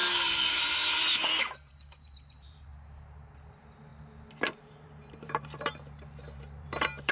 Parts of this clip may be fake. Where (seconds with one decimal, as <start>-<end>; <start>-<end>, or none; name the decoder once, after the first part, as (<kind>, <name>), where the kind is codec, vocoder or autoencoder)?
0.5-2.7 (vocoder, BigVGAN v2); 3.5-3.9; 4.7-7.1